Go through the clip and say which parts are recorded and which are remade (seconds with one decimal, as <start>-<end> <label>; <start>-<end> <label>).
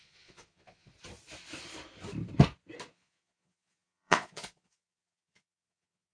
0.0-0.9 remade; 0.9-2.9 recorded; 2.9-6.1 remade